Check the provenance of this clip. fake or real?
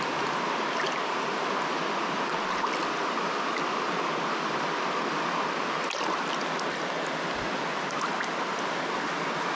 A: real